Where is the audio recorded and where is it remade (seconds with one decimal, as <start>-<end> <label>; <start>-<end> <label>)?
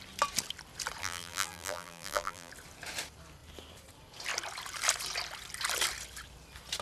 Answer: 0.0-1.0 recorded; 1.0-2.5 remade; 2.5-6.8 recorded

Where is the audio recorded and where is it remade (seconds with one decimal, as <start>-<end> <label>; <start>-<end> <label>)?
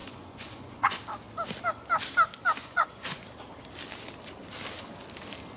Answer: 0.0-1.0 remade; 1.0-2.6 recorded; 2.6-3.2 remade; 3.2-5.6 recorded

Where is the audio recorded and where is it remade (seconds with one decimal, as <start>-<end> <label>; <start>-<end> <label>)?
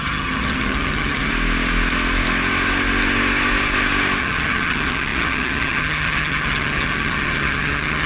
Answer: 0.0-1.3 remade; 1.3-4.2 recorded; 4.2-8.1 remade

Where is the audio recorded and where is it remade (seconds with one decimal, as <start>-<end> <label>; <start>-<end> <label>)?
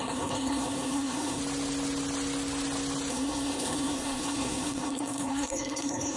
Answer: 0.0-1.4 remade; 1.4-3.1 recorded; 3.1-6.2 remade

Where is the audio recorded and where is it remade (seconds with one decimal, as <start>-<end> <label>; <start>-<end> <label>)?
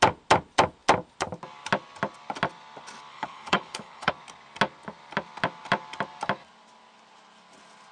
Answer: 0.0-3.1 recorded; 3.1-4.1 remade; 4.1-7.9 recorded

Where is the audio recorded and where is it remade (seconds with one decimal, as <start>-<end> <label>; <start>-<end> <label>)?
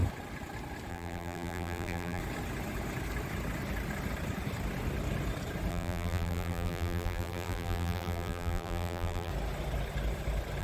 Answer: 0.0-0.9 recorded; 0.9-2.2 remade; 2.2-5.7 recorded; 5.7-9.3 remade; 9.3-10.6 recorded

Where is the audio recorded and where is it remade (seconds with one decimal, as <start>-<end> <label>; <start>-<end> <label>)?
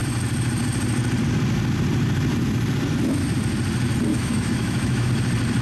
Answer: 0.0-4.1 recorded; 4.1-5.1 remade; 5.1-5.6 recorded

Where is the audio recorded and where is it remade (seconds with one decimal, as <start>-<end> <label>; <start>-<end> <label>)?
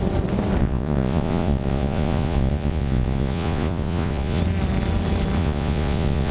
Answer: 0.0-0.6 recorded; 0.6-4.4 remade; 4.4-5.4 recorded; 5.4-6.3 remade